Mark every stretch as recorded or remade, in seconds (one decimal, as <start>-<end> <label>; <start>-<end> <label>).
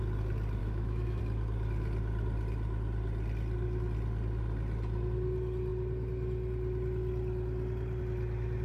0.0-0.6 recorded; 0.6-1.2 remade; 1.2-8.6 recorded